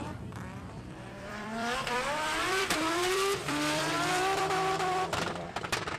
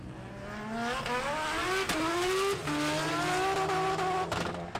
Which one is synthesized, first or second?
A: first